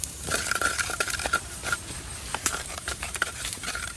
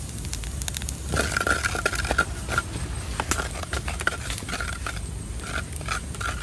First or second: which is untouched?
second